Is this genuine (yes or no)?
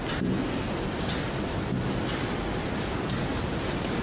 yes